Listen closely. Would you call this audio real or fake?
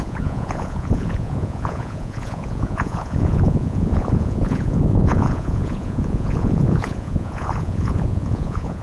fake